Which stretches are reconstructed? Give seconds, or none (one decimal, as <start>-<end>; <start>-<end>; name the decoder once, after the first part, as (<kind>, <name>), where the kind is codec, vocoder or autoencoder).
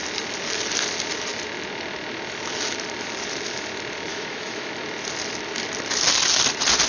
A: 4.1-4.7 (autoencoder, DAC-VAE)